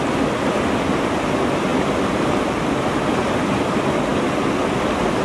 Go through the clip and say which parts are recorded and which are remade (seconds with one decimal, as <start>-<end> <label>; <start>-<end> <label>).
0.0-5.2 recorded